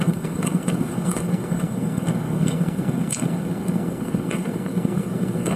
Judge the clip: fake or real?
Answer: fake